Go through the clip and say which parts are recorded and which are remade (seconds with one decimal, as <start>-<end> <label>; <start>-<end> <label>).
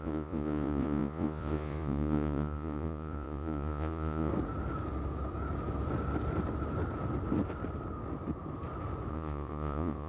0.0-4.3 remade; 4.3-9.1 recorded; 9.1-10.1 remade